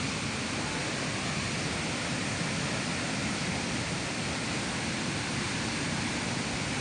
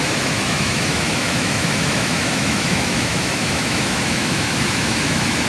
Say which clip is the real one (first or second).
first